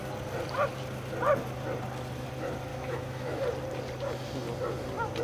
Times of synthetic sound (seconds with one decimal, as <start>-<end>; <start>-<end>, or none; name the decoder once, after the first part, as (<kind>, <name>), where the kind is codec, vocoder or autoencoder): 2.7-3.4 (autoencoder, DAC-VAE)